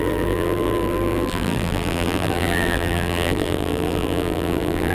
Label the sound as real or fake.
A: fake